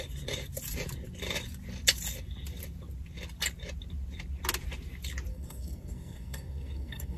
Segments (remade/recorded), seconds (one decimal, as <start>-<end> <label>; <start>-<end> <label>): 0.0-5.3 recorded; 5.3-7.2 remade